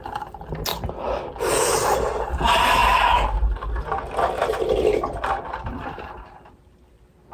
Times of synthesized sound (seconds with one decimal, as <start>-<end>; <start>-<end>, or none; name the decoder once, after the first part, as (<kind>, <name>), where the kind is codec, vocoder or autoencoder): none